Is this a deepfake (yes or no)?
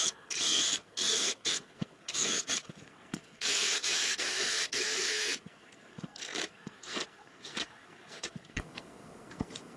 yes